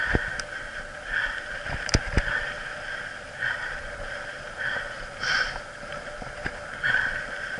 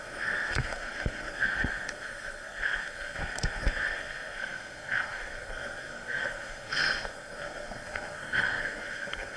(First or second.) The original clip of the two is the first